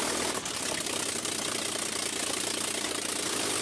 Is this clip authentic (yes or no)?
yes